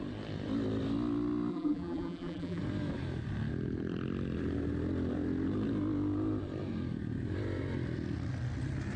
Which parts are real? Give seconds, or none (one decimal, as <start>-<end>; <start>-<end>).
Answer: 0.0-1.5; 2.6-9.0